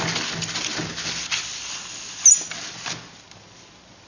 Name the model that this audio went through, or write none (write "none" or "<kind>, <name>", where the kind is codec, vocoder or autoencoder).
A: none